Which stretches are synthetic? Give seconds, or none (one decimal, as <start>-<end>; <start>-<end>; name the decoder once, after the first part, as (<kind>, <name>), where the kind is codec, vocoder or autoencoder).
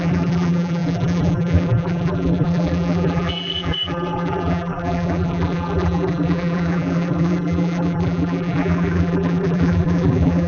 0.0-10.5 (vocoder, BigVGAN v2)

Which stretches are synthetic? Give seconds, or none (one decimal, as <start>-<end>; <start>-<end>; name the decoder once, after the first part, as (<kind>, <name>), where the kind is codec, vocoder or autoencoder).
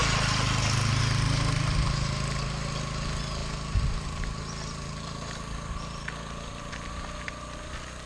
none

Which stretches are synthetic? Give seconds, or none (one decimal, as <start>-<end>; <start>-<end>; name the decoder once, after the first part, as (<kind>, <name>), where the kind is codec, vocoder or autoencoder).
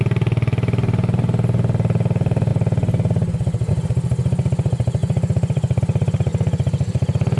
5.0-5.8 (vocoder, BigVGAN v2)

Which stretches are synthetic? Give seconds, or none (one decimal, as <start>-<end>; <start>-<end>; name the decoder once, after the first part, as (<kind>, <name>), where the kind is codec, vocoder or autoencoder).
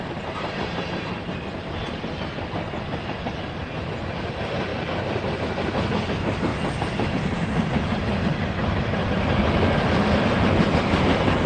0.0-4.7 (vocoder, BigVGAN v2); 6.1-6.5; 7.1-9.0; 10.7-11.5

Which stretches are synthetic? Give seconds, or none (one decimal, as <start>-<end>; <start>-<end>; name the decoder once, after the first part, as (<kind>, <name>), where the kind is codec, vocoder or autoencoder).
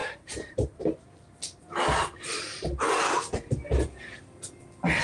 0.0-0.8 (vocoder, BigVGAN v2)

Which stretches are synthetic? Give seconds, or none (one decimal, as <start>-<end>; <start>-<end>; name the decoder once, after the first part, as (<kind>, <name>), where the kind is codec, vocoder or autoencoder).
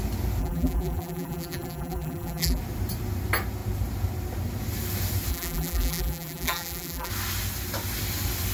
0.4-2.6 (vocoder, BigVGAN v2); 5.3-7.1